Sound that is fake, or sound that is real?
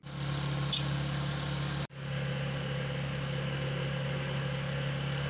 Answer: real